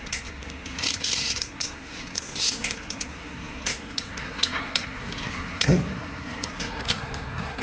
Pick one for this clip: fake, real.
fake